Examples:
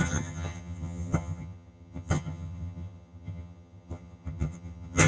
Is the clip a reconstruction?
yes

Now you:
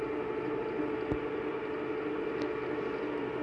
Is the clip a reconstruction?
no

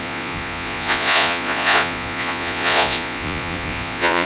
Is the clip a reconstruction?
yes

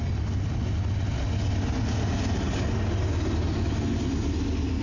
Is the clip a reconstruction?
no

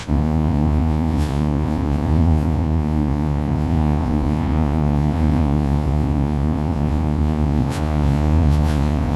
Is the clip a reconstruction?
yes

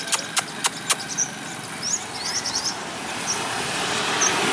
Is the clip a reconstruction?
no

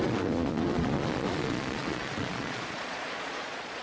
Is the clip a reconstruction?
yes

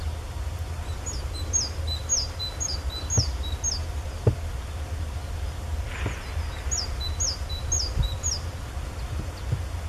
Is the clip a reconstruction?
no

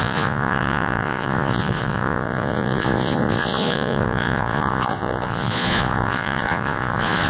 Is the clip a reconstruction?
yes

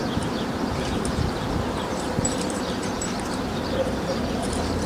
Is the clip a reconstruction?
yes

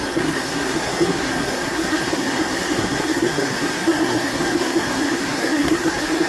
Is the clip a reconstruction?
yes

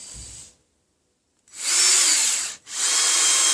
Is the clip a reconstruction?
no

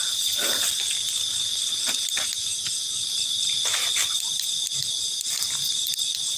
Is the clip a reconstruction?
no